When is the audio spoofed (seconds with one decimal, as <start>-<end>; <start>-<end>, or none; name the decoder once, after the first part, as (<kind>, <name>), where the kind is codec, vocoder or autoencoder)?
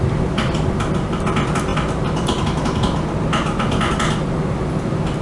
none